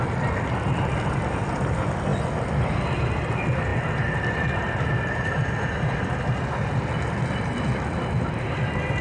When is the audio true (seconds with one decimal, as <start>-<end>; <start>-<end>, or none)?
0.0-9.0